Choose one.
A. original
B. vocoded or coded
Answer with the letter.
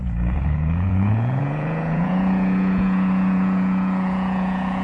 B